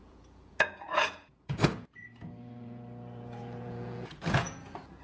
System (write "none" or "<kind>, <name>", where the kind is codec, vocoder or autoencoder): vocoder, Vocos